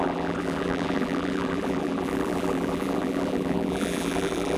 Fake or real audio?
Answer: fake